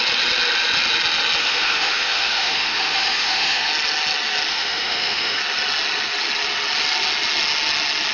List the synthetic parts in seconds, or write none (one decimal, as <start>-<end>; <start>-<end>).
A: 1.4-3.7; 4.5-5.4